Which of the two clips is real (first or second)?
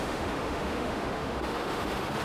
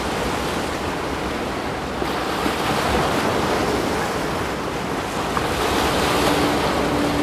second